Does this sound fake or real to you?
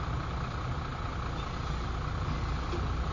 real